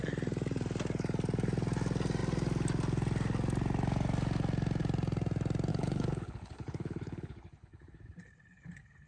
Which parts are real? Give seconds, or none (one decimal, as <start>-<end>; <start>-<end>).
0.0-5.7